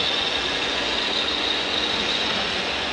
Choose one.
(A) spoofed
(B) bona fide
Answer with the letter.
A